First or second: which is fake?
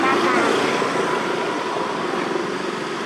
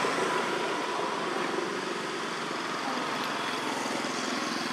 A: first